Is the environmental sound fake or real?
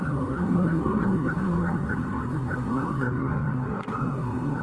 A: fake